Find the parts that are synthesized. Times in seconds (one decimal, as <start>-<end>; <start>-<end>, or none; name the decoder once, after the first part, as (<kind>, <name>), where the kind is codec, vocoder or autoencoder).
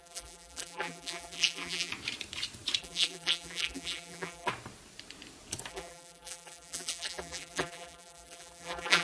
0.0-1.9 (vocoder, BigVGAN v2); 2.8-4.5; 5.7-9.0